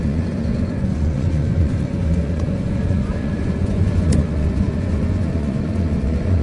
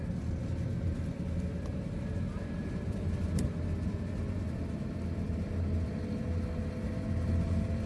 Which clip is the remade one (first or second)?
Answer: first